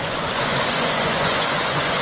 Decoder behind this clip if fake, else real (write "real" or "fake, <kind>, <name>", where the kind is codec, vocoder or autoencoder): fake, vocoder, Vocos